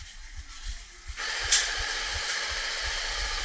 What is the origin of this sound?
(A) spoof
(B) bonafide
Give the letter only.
B